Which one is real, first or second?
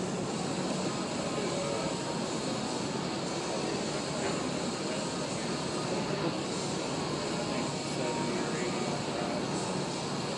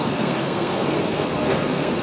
first